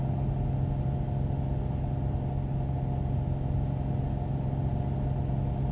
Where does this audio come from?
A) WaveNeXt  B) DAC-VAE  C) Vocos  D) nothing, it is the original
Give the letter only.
D